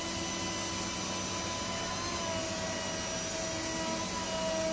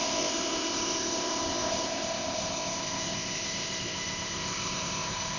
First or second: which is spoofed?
second